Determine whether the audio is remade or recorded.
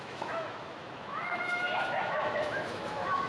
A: remade